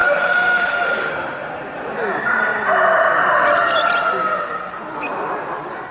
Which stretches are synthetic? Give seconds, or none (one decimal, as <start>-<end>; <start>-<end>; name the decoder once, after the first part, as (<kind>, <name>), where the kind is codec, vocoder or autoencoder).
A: 0.0-1.1 (autoencoder, DAC-VAE)